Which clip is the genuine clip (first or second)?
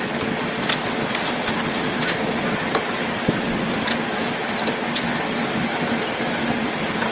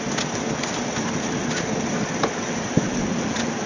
first